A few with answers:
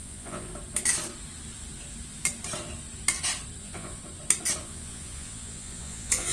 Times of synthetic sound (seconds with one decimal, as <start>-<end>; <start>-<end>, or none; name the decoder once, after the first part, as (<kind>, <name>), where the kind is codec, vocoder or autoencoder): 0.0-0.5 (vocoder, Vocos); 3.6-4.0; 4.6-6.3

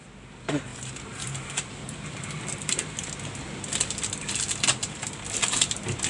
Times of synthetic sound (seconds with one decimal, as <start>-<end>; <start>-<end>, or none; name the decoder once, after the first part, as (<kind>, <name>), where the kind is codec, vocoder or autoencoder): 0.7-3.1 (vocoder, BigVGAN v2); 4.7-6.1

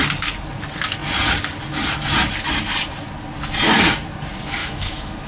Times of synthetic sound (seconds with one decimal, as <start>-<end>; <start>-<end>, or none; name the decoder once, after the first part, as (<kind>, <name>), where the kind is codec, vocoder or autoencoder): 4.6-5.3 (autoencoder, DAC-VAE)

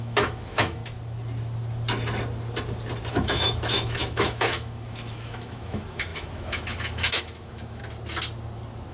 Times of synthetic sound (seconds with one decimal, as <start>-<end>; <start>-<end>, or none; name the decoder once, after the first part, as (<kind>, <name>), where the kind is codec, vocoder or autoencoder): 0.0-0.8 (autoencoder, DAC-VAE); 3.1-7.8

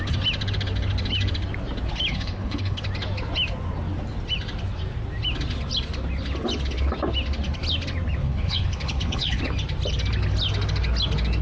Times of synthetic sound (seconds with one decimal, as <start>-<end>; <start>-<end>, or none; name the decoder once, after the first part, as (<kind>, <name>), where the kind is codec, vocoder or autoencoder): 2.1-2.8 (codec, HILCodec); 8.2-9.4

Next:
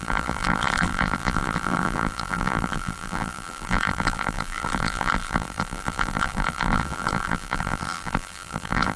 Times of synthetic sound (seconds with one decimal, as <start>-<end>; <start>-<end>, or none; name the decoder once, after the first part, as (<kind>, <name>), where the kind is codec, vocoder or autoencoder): 0.0-9.0 (vocoder, BigVGAN v2)